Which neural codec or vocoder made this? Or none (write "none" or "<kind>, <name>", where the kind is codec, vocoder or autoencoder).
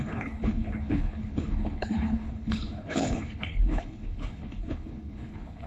codec, HILCodec